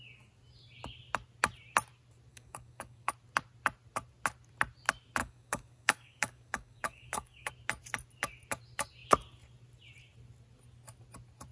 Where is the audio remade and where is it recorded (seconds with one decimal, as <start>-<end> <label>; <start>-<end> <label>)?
0.0-2.3 recorded; 2.3-3.1 remade; 3.1-5.2 recorded; 5.2-7.5 remade; 7.5-11.5 recorded